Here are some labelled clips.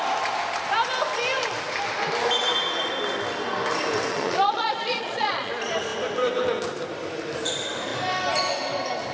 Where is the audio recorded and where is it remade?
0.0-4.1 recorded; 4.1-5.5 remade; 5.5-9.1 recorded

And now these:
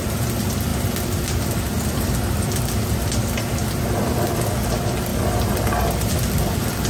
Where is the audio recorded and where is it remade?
0.0-5.1 recorded; 5.1-6.1 remade; 6.1-6.9 recorded

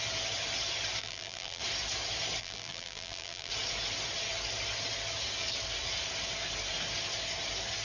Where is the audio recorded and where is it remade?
0.0-1.0 recorded; 1.0-1.6 remade; 1.6-2.4 recorded; 2.4-3.5 remade; 3.5-7.8 recorded

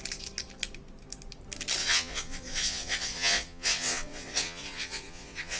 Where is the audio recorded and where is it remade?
0.0-1.8 recorded; 1.8-5.6 remade